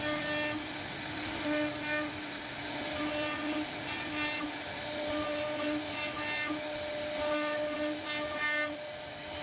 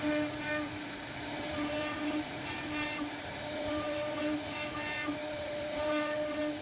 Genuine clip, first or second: first